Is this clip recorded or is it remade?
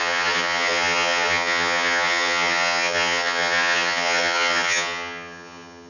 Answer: remade